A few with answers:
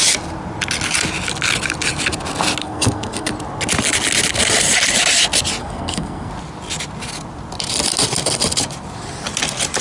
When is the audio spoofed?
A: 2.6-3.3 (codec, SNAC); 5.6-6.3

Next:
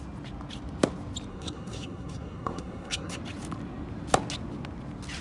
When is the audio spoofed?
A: 1.3-3.2 (codec, SNAC)

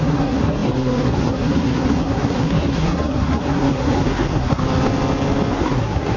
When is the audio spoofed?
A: 0.0-4.6 (codec, SNAC); 5.5-6.2

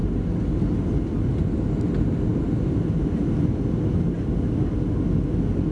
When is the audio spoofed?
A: none